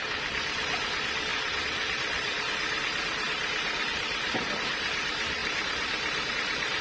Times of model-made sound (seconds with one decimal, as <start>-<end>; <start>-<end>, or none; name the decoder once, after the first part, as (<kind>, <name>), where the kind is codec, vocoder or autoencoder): 0.0-6.8 (vocoder, BigVGAN v2)